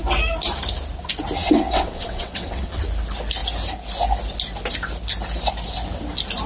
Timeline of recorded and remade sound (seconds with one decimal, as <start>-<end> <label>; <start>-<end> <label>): 0.0-1.4 recorded; 1.4-2.8 remade; 2.8-6.5 recorded